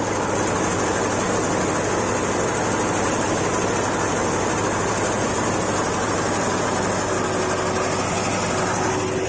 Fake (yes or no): no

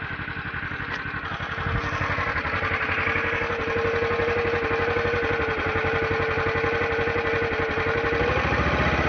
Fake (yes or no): no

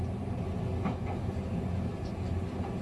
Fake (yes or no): no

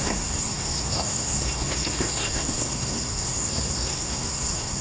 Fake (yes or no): yes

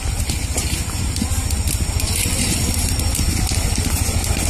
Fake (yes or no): no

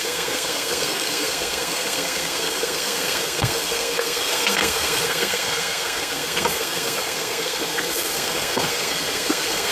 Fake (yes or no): yes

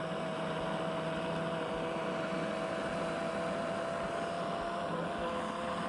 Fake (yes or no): no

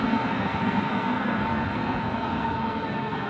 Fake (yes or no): yes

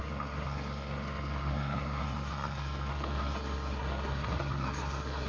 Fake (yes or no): yes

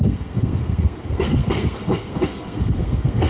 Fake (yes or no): yes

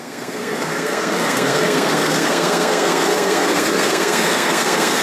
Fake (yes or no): yes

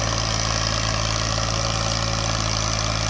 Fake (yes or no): no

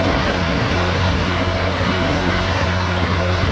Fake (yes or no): yes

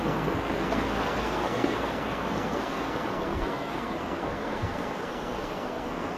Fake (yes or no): yes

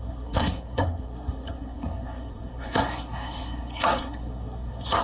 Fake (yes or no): yes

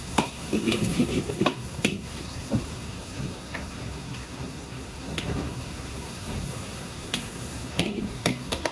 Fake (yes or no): yes